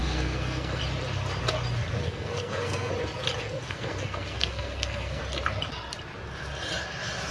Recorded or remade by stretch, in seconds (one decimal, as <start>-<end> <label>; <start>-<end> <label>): 0.0-0.8 remade; 0.8-2.0 recorded; 2.0-2.9 remade; 2.9-3.4 recorded; 3.4-5.2 remade; 5.2-7.3 recorded